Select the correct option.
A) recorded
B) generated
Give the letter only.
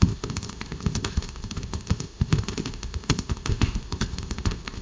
B